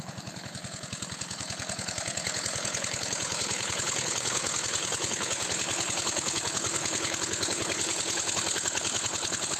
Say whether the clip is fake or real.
fake